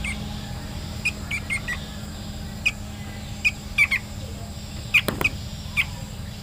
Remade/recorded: recorded